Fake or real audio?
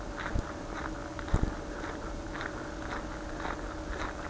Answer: real